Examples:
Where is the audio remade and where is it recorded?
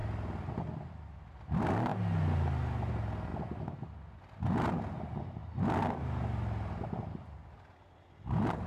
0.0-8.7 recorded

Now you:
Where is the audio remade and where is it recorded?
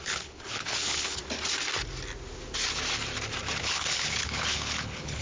0.0-1.2 remade; 1.2-3.6 recorded; 3.6-5.2 remade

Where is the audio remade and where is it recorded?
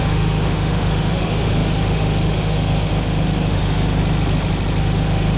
0.0-4.0 remade; 4.0-4.8 recorded; 4.8-5.4 remade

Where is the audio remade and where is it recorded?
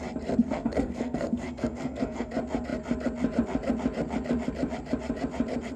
0.0-0.4 recorded; 0.4-2.3 remade; 2.3-5.8 recorded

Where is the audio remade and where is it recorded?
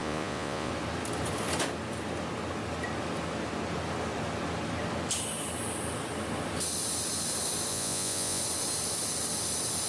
0.0-0.7 remade; 0.7-7.7 recorded; 7.7-8.4 remade; 8.4-9.9 recorded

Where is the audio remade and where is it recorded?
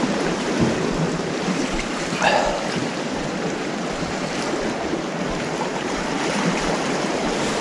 0.0-7.6 remade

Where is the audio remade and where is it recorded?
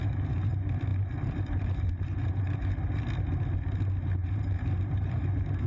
0.0-0.5 remade; 0.5-0.9 recorded; 0.9-3.0 remade; 3.0-4.2 recorded; 4.2-5.7 remade